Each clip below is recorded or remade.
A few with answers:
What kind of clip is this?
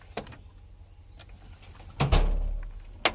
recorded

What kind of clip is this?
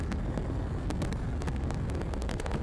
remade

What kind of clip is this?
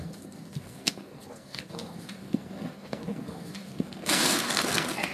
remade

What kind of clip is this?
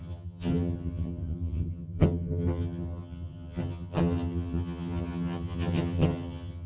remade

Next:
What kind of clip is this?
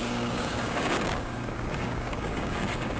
remade